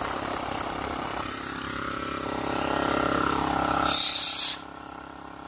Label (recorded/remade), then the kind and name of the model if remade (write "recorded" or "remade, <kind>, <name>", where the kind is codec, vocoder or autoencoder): recorded